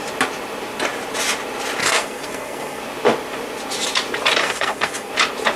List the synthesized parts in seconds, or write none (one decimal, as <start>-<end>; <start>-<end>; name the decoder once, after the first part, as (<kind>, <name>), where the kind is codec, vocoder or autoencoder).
1.8-2.8 (codec, SNAC); 4.4-5.1